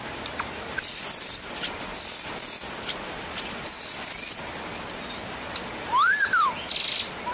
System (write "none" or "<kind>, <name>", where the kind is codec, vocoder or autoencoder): none